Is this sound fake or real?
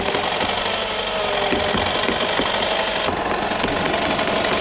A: real